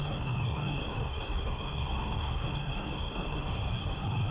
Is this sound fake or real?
fake